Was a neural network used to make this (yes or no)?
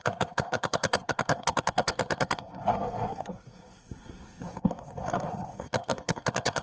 yes